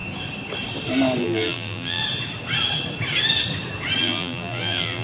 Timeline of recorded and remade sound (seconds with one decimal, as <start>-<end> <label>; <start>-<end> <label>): 0.0-1.2 recorded; 1.2-2.0 remade; 2.0-4.0 recorded; 4.0-5.0 remade